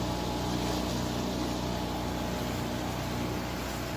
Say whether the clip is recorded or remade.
recorded